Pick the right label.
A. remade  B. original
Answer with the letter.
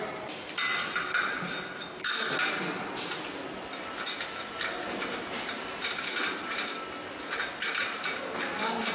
B